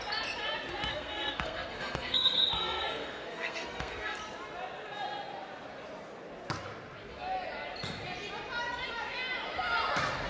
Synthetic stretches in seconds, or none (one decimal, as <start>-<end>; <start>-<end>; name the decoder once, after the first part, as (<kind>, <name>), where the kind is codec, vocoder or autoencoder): 0.9-4.2 (codec, SNAC)